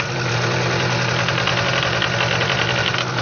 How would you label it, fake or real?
real